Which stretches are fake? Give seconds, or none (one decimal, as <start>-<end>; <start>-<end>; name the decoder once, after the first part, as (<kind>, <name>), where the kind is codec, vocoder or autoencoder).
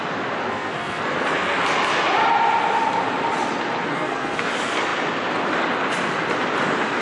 0.4-1.6 (codec, SNAC); 3.9-4.5